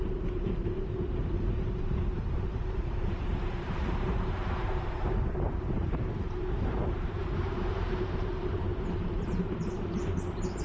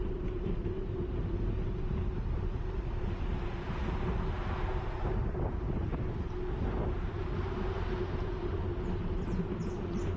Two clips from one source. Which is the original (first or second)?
second